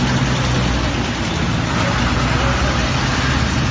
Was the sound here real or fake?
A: real